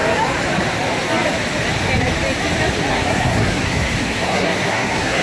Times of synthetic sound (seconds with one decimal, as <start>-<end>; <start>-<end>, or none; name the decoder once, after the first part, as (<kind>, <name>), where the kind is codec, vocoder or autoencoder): 2.9-5.2 (codec, SNAC)